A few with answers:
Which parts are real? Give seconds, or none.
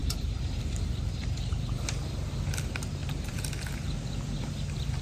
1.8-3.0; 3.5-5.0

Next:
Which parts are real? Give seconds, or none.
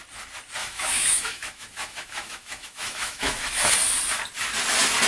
0.0-0.6; 3.7-5.1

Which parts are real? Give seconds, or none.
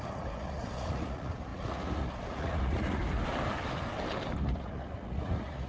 3.0-4.4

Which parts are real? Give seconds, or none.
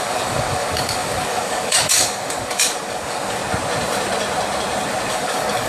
3.4-5.1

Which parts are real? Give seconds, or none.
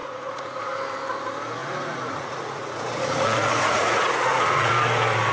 0.6-1.6; 4.7-5.3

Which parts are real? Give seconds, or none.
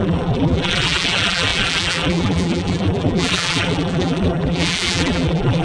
none